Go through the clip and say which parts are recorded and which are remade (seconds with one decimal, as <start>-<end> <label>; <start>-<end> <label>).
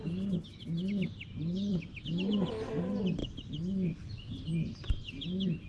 0.0-5.7 recorded